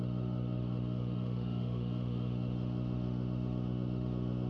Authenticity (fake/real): fake